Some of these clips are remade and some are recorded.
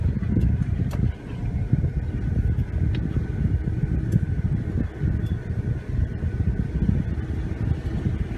recorded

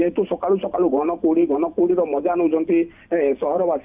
remade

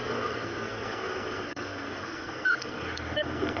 remade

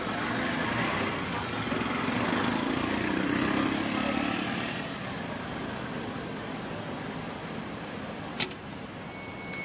recorded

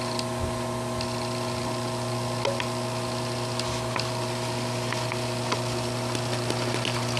recorded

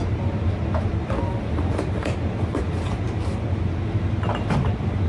remade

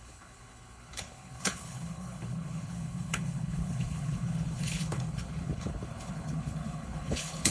remade